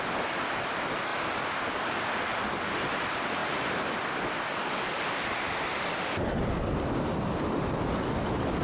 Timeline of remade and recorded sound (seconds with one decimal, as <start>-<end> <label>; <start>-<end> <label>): 0.0-8.6 recorded